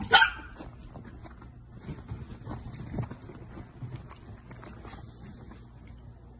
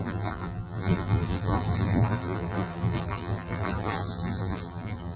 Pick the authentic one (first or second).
first